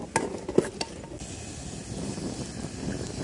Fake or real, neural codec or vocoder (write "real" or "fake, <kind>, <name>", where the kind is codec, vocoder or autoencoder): real